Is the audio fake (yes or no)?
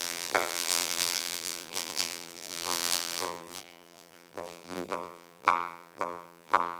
yes